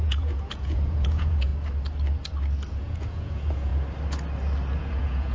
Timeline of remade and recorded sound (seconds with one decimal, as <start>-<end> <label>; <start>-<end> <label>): 0.0-1.5 remade; 1.5-2.7 recorded; 2.7-3.7 remade; 3.7-4.8 recorded; 4.8-5.3 remade